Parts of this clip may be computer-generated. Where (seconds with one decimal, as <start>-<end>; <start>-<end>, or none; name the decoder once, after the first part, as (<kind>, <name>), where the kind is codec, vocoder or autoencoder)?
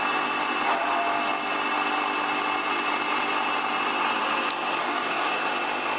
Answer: 4.8-5.4 (codec, DAC)